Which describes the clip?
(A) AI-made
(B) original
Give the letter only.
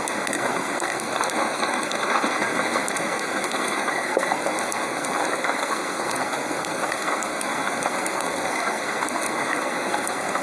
A